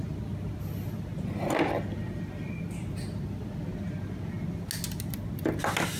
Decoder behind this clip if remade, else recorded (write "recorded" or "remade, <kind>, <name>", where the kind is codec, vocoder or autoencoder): recorded